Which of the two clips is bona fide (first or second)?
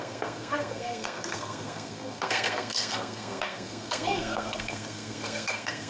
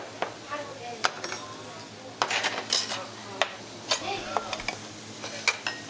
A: second